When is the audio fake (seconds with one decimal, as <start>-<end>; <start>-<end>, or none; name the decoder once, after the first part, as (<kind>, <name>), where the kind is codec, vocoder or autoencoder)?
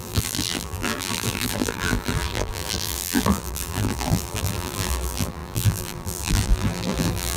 0.0-7.4 (vocoder, BigVGAN v2)